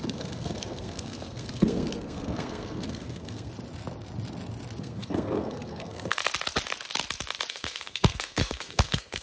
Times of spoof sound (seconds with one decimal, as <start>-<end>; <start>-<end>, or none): 0.0-3.5; 4.8-6.2; 7.5-9.2

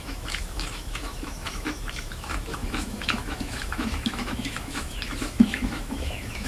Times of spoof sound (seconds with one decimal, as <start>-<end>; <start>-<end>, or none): 0.0-6.5